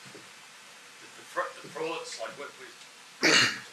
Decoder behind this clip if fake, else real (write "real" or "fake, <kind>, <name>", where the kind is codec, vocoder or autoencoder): real